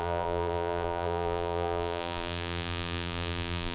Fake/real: fake